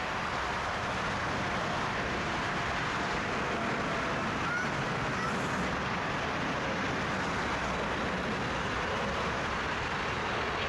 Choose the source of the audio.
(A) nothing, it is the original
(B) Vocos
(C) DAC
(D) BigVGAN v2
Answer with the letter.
A